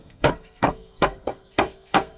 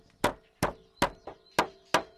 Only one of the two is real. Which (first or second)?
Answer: second